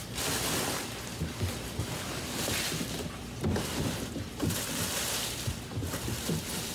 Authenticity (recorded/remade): remade